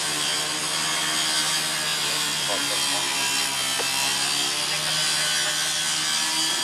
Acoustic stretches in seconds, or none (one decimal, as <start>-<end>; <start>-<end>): 0.0-1.9; 2.6-6.6